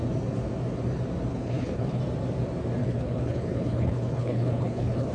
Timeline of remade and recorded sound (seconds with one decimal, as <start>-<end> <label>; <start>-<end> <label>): 0.0-1.3 recorded; 1.3-2.0 remade; 2.0-2.8 recorded; 2.8-5.1 remade